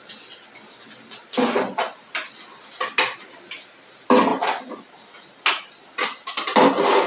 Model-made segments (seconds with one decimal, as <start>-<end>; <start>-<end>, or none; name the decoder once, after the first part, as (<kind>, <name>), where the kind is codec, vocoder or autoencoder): 4.3-4.9 (vocoder, BigVGAN v2)